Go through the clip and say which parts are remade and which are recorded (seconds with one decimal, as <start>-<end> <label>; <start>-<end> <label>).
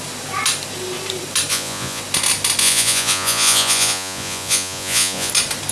0.0-1.5 recorded; 1.5-2.0 remade; 2.0-2.6 recorded; 2.6-5.3 remade; 5.3-5.7 recorded